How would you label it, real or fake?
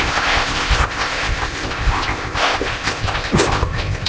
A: fake